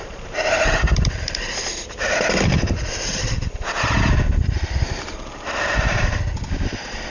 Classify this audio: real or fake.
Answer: fake